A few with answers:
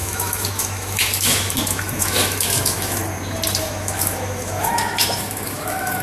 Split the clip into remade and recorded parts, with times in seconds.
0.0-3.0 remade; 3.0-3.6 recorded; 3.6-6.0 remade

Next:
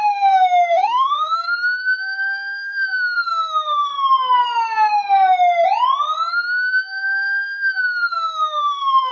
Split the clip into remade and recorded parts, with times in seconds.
0.0-3.9 remade; 3.9-6.3 recorded; 6.3-9.1 remade

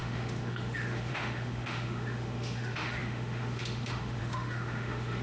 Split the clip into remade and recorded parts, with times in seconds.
0.0-5.2 remade

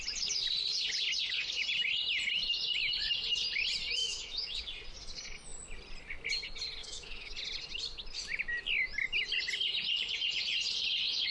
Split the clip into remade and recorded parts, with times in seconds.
0.0-4.0 recorded; 4.0-4.6 remade; 4.6-6.8 recorded; 6.8-7.3 remade; 7.3-11.3 recorded

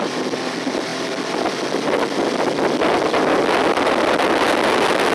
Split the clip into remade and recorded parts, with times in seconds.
0.0-5.1 recorded

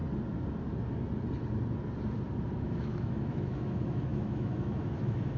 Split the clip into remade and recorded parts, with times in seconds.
0.0-2.6 recorded; 2.6-5.4 remade

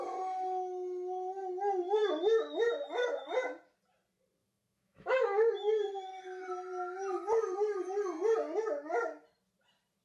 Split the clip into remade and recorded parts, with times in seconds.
0.0-4.4 recorded; 4.4-5.5 remade; 5.5-10.0 recorded